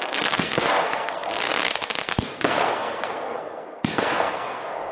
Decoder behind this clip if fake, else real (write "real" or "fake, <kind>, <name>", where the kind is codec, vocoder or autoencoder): fake, codec, SNAC